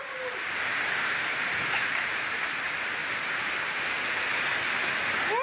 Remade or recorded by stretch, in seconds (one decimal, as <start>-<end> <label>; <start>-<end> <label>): 0.0-3.0 recorded; 3.0-5.0 remade; 5.0-5.4 recorded